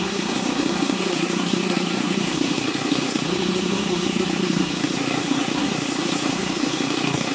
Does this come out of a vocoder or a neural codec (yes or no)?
yes